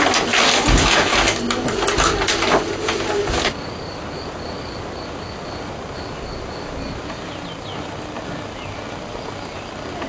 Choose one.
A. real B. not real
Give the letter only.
A